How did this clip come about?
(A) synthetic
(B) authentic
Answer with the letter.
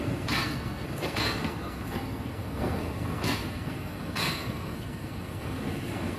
A